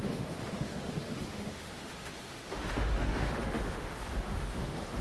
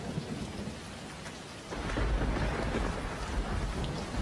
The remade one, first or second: first